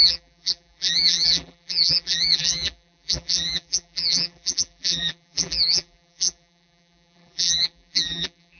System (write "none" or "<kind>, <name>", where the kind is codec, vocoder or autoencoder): vocoder, BigVGAN v2